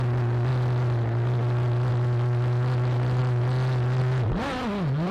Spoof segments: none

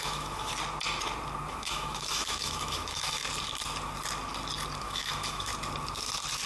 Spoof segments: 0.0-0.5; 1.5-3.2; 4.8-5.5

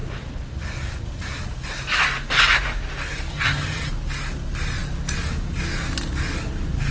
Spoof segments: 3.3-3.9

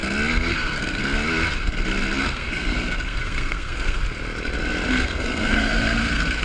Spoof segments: 0.5-1.0; 2.2-4.0; 4.9-6.4